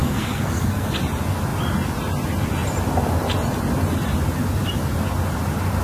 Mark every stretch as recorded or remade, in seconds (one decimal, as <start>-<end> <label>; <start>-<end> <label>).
0.0-0.9 remade; 0.9-5.8 recorded